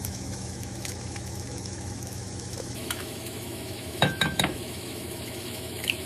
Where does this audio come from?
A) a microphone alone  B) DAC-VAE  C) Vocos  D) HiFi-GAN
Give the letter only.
B